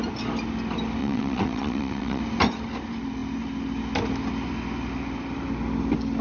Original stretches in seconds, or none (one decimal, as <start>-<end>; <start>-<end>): 0.0-1.0; 2.2-6.2